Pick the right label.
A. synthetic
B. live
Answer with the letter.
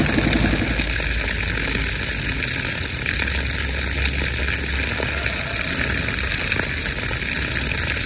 B